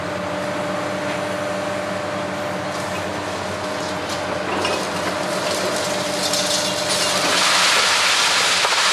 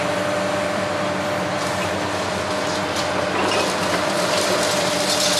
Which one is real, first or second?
first